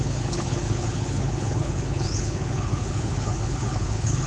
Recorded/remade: remade